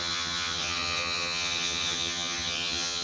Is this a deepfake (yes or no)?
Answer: yes